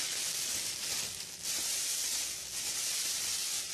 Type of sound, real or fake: real